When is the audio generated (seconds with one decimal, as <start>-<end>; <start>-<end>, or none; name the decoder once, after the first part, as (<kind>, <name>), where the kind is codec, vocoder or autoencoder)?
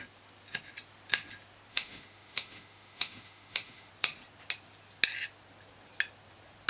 1.7-3.9 (autoencoder, DAC-VAE)